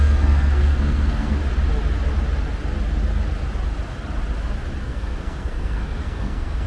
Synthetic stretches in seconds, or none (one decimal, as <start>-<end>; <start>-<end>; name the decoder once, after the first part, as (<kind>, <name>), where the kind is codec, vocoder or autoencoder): 0.0-1.4 (codec, SNAC); 4.8-6.7